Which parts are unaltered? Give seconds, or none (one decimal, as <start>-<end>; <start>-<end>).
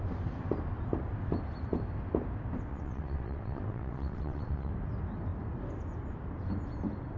0.0-2.7; 4.7-7.2